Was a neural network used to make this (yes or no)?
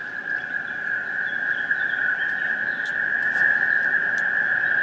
no